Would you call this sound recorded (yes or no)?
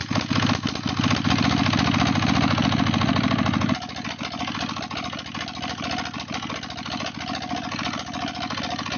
yes